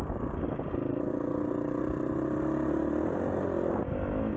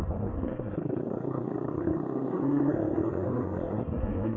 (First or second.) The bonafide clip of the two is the first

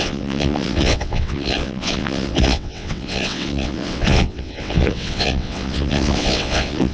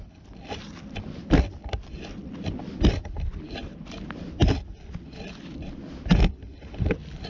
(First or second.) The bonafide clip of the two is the second